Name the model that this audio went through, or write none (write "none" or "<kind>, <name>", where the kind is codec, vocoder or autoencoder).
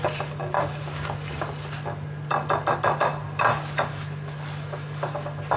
none